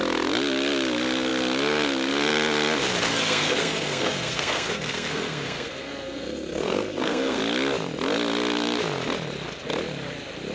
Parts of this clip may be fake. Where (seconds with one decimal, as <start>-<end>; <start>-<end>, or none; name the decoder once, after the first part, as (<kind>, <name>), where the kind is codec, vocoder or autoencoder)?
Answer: 3.1-7.4 (codec, SNAC)